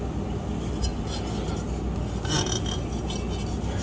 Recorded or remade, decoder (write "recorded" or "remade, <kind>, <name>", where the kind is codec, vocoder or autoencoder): recorded